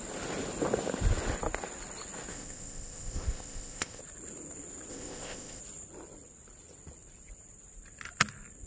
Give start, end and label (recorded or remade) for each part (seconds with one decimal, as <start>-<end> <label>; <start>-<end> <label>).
0.0-2.3 recorded; 2.3-4.0 remade; 4.0-4.9 recorded; 4.9-5.6 remade; 5.6-8.7 recorded